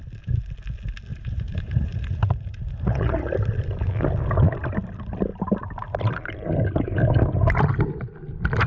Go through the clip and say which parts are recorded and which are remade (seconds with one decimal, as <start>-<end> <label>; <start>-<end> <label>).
0.0-1.1 recorded; 1.1-3.3 remade; 3.3-8.7 recorded